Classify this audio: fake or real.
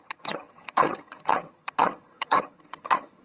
fake